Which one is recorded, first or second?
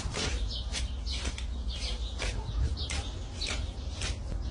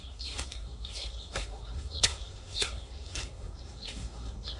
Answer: first